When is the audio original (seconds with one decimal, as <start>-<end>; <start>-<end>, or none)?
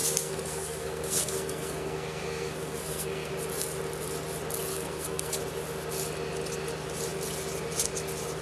3.3-4.7; 5.4-8.4